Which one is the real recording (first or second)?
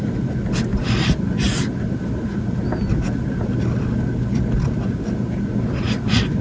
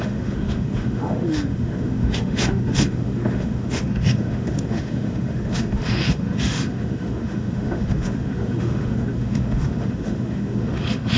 first